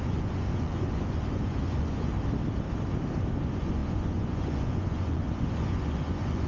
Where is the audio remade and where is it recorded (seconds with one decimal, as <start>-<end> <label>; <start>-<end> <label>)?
0.0-2.1 remade; 2.1-3.4 recorded; 3.4-6.5 remade